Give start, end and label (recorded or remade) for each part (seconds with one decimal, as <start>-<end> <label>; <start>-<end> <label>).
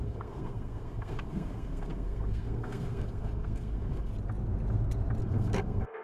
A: 0.0-4.1 remade; 4.1-5.2 recorded; 5.2-6.0 remade